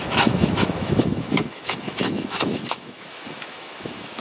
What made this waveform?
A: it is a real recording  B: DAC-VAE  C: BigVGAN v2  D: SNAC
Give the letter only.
B